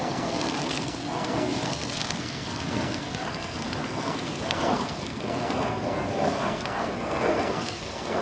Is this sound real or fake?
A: fake